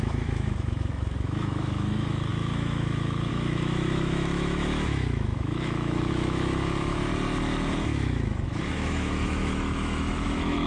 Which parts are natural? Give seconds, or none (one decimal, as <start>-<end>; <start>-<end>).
7.1-7.7